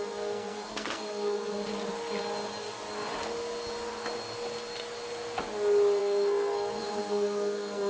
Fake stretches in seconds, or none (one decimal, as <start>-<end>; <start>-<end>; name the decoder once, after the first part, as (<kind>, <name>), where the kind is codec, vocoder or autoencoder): 0.0-1.7 (codec, SNAC); 6.0-7.9